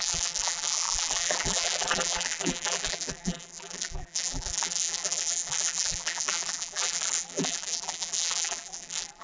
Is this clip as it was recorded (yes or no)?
no